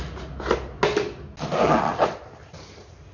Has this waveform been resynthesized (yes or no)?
no